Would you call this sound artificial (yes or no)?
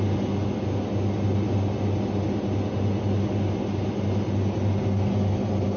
no